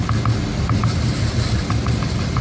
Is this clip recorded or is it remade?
recorded